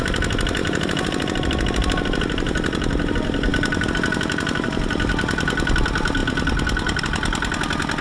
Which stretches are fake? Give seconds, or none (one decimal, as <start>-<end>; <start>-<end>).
0.6-3.1; 3.5-5.7